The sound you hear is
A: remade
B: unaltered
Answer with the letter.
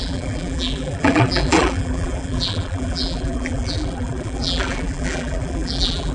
A